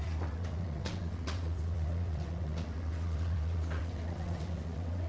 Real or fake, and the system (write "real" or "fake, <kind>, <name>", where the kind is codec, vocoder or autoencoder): fake, vocoder, WaveNeXt